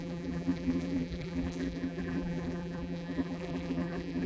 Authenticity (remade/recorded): remade